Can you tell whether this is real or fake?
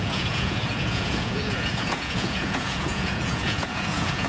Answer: fake